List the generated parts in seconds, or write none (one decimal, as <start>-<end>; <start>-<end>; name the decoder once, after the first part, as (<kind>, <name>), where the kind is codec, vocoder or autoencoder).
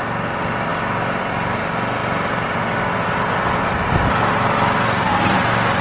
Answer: none